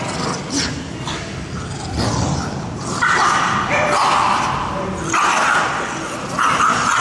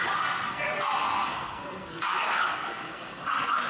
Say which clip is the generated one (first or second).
second